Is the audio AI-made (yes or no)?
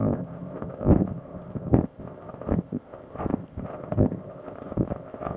yes